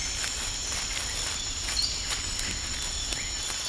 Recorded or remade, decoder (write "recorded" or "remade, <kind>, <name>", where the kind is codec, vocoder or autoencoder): recorded